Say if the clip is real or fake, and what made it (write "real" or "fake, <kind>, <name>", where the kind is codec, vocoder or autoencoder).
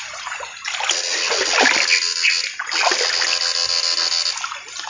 real